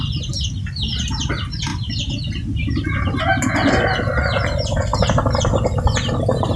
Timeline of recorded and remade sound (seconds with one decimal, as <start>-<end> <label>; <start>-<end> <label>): 0.0-4.9 recorded; 4.9-5.8 remade; 5.8-6.6 recorded